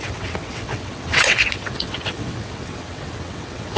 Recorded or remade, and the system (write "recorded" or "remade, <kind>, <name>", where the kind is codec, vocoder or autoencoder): remade, vocoder, WaveNeXt